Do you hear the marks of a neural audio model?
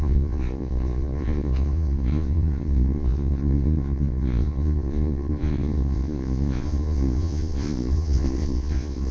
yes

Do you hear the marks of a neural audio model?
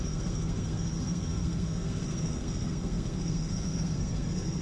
yes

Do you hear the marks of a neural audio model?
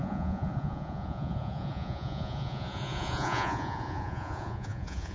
yes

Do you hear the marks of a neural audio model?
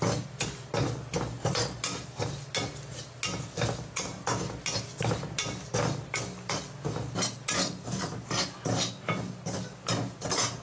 no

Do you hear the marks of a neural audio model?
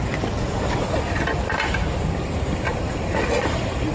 no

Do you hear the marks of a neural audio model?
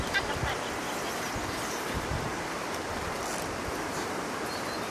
yes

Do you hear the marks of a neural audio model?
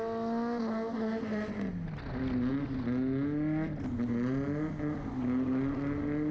no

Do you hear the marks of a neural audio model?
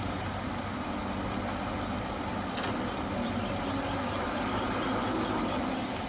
no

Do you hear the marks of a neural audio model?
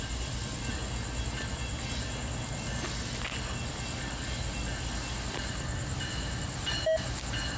no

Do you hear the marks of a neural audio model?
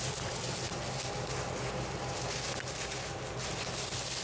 no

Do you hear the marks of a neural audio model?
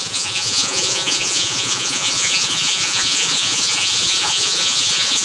yes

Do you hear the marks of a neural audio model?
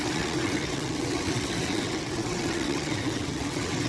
yes